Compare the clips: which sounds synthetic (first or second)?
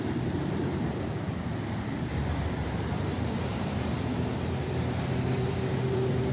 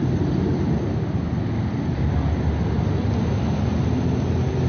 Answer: first